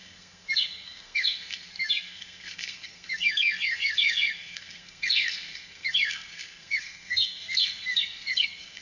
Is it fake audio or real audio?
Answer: fake